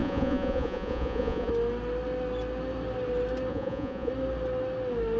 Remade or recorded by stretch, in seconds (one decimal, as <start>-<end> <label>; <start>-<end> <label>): 0.0-1.5 remade; 1.5-3.5 recorded; 3.5-4.1 remade; 4.1-5.2 recorded

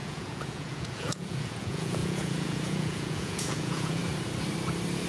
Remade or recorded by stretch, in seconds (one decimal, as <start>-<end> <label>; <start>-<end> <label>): 0.0-4.0 remade; 4.0-5.1 recorded

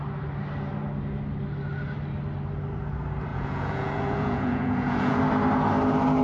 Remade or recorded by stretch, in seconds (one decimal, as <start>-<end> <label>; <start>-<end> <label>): 0.0-3.3 recorded; 3.3-5.2 remade; 5.2-6.2 recorded

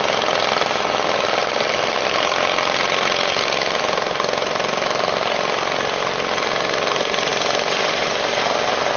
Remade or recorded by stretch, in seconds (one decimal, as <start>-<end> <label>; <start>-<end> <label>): 0.0-9.0 recorded

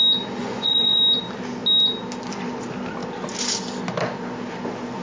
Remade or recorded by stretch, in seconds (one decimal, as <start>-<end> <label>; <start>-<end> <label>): 0.0-0.4 recorded; 0.4-1.0 remade; 1.0-5.0 recorded

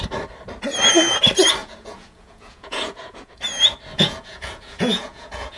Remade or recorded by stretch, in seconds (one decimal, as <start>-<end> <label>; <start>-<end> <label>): 0.0-1.6 recorded; 1.6-3.4 remade; 3.4-3.9 recorded; 3.9-5.6 remade

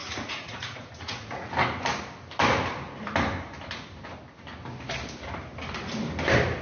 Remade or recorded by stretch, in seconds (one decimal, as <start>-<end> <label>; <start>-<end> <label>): 0.0-1.5 remade; 1.5-6.6 recorded

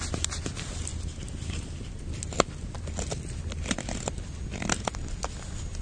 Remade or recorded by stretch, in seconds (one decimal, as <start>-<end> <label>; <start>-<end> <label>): 0.0-5.8 recorded